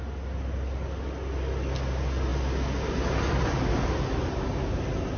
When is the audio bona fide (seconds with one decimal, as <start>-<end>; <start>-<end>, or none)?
0.0-5.2